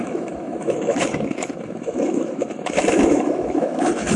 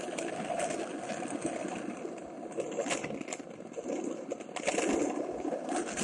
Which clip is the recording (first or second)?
second